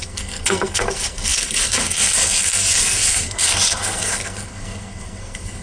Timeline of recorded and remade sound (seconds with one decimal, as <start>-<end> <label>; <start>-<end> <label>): 0.0-5.6 remade